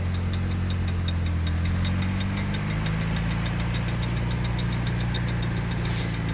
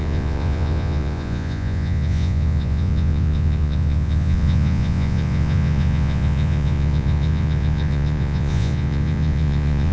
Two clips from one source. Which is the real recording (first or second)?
first